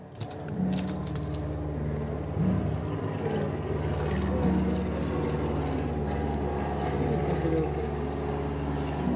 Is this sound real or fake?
real